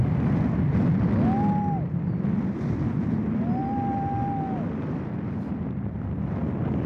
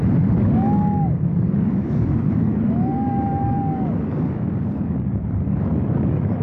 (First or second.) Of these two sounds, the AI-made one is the second